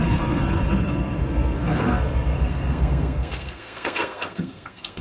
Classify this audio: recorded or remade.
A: remade